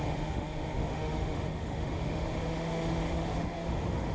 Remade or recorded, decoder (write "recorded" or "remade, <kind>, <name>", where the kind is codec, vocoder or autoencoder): remade, autoencoder, DAC-VAE